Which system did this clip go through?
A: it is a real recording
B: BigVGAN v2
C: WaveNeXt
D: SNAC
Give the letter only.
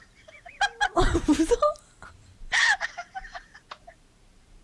B